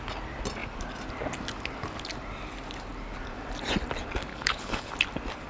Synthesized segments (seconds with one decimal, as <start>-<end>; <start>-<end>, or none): 4.3-4.9